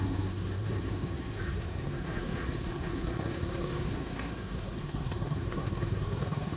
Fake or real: fake